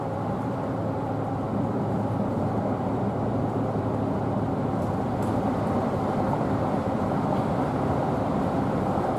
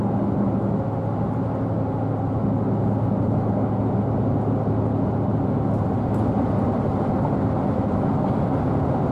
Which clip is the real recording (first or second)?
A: second